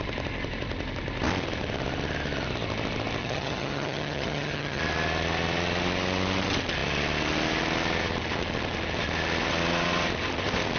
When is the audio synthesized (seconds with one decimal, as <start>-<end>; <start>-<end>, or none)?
3.2-4.8